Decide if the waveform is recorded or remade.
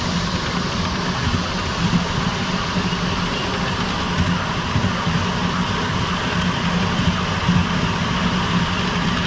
recorded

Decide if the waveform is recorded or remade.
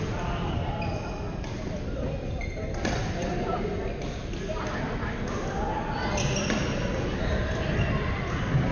recorded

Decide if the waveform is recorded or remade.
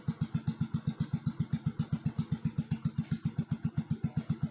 recorded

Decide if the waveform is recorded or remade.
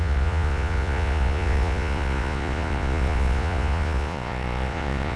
remade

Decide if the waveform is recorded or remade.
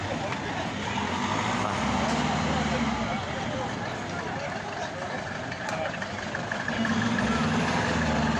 recorded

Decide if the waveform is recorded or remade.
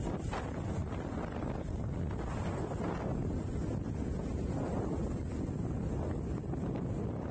recorded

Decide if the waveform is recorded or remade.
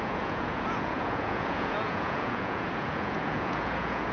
remade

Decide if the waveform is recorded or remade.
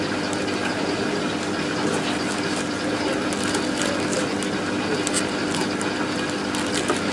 recorded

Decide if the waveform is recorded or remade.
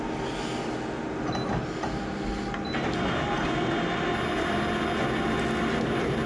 recorded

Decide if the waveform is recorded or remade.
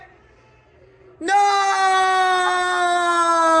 recorded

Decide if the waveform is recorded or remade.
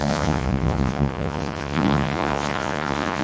remade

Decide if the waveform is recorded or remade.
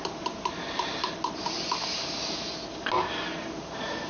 recorded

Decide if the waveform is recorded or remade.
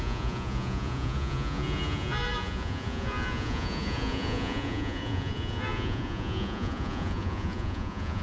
remade